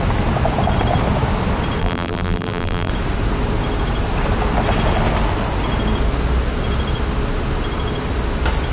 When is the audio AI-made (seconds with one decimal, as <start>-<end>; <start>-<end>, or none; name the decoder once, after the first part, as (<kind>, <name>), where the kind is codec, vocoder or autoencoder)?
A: 1.8-2.9 (vocoder, BigVGAN v2)